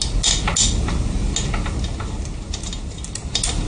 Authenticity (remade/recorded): recorded